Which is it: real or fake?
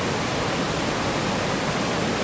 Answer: real